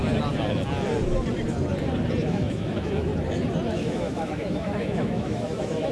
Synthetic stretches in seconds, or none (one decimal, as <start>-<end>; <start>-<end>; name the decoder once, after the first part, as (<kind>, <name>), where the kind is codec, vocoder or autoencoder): 2.2-3.1 (autoencoder, DAC-VAE); 3.7-5.9